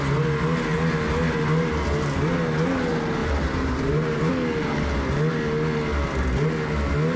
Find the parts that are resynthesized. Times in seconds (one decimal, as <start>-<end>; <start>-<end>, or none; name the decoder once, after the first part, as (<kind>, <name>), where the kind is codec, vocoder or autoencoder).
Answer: 3.2-4.3 (vocoder, BigVGAN v2)